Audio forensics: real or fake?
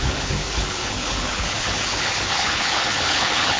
fake